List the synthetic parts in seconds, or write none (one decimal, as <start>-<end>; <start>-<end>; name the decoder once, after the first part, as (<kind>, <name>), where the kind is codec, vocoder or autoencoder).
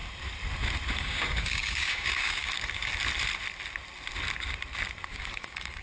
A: 1.0-2.9 (codec, DAC); 5.1-5.8